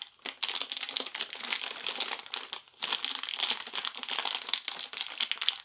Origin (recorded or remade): recorded